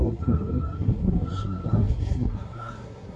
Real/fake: fake